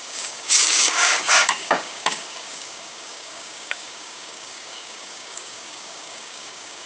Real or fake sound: fake